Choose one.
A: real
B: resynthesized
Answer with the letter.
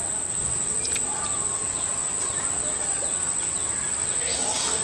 A